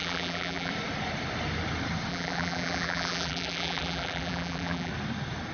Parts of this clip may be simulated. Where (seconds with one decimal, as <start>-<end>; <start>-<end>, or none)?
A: 0.0-0.7; 2.1-4.9